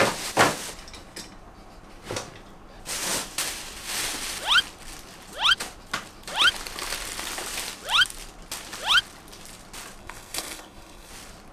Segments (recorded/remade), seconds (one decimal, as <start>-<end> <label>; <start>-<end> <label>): 0.0-10.0 recorded; 10.0-11.1 remade; 11.1-11.5 recorded

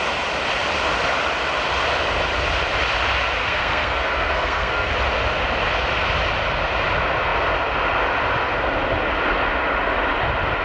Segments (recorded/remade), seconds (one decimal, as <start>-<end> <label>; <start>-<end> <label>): 0.0-3.4 recorded; 3.4-4.9 remade; 4.9-10.6 recorded

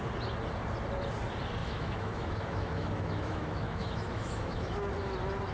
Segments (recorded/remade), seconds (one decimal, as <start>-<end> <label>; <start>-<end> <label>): 0.0-1.6 recorded; 1.6-4.9 remade; 4.9-5.5 recorded

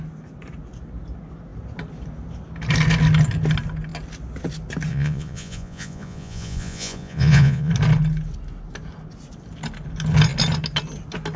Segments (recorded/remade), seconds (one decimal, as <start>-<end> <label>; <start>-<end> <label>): 0.0-4.9 recorded; 4.9-7.7 remade; 7.7-11.4 recorded

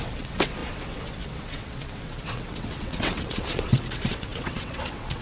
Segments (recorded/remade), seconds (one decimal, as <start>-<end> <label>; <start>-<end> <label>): 0.0-5.2 remade

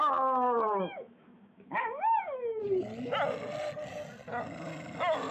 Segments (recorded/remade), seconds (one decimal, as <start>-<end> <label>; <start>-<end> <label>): 0.0-2.6 remade; 2.6-5.3 recorded

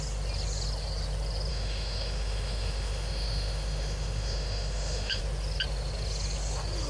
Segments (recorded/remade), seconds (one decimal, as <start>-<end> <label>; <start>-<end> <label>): 0.0-1.5 recorded; 1.5-5.2 remade; 5.2-6.9 recorded

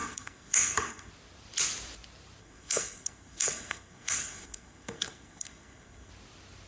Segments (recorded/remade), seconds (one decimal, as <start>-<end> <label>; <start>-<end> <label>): 0.0-1.1 remade; 1.1-2.4 recorded; 2.4-6.1 remade; 6.1-6.7 recorded